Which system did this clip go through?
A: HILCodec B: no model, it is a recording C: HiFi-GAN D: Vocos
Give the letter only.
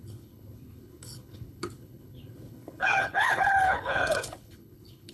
A